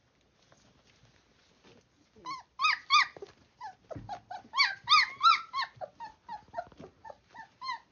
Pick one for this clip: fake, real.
real